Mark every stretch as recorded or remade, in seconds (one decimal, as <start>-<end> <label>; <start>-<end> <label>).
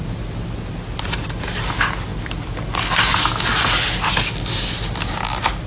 0.0-5.7 recorded